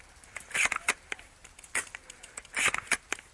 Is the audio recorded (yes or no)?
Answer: yes